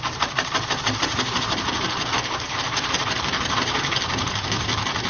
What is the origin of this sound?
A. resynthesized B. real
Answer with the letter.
A